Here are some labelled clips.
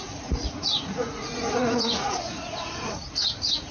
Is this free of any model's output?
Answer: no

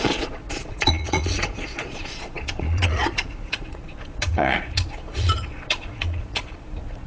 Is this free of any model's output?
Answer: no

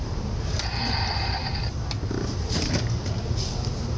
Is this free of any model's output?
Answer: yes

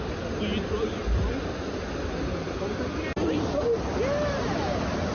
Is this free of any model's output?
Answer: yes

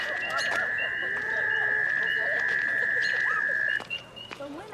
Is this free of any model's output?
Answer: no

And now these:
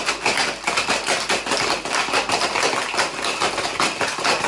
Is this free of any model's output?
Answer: yes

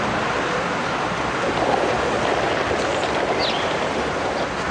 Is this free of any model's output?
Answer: yes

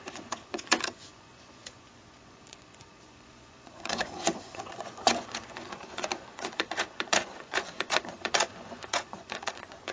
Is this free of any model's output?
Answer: no